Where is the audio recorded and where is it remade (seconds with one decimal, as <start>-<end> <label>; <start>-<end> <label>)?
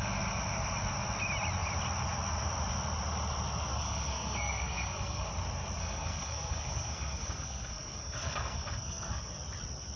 0.0-3.7 recorded; 3.7-5.3 remade; 5.3-5.8 recorded; 5.8-9.3 remade; 9.3-10.0 recorded